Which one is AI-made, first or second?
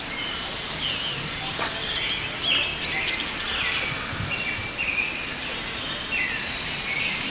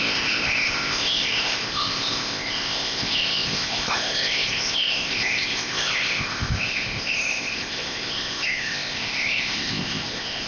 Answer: second